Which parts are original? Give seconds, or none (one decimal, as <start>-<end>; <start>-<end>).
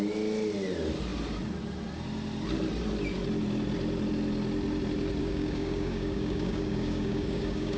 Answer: 0.0-5.2